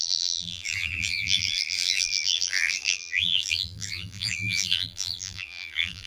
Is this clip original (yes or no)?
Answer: no